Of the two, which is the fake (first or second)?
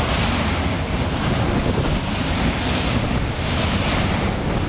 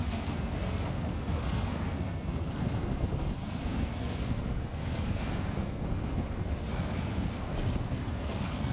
second